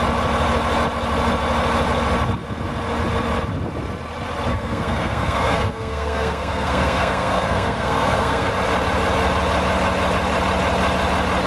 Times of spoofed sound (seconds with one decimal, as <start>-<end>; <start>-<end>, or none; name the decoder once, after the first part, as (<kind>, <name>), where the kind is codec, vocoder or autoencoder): 4.5-8.5 (codec, SNAC)